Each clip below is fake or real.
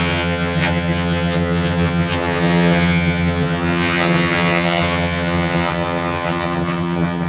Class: fake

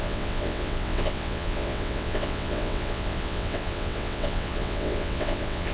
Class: fake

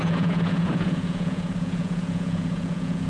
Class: fake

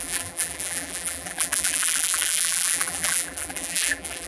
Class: fake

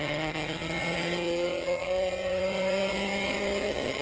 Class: fake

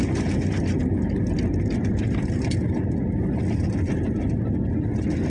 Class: real